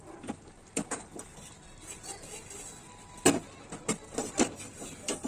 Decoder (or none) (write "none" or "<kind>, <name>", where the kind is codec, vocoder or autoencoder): none